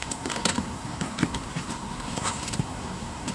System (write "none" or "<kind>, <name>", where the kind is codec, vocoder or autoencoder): codec, SNAC